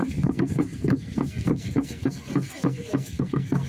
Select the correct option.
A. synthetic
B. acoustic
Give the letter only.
A